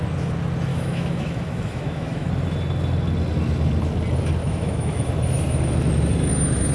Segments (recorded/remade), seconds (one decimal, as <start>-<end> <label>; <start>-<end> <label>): 0.0-0.7 recorded; 0.7-2.3 remade; 2.3-4.4 recorded; 4.4-5.1 remade; 5.1-6.7 recorded